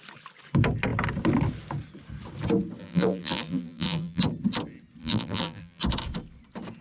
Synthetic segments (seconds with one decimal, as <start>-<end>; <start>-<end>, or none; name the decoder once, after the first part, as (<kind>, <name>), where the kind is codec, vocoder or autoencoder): 2.8-4.2 (vocoder, BigVGAN v2); 5.0-5.8